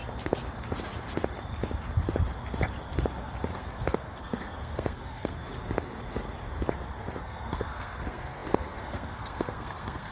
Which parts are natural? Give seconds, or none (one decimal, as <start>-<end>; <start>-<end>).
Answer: 0.0-3.5; 5.5-7.2